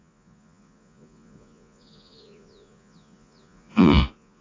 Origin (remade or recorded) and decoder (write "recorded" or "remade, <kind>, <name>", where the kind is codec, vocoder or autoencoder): remade, vocoder, Vocos